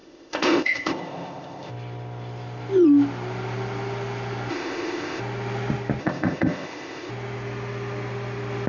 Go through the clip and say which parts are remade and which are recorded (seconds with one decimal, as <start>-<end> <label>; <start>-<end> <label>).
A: 0.0-1.7 remade; 1.7-4.5 recorded; 4.5-5.2 remade; 5.2-6.0 recorded; 6.0-7.1 remade; 7.1-8.7 recorded